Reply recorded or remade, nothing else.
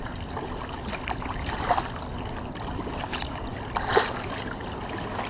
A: recorded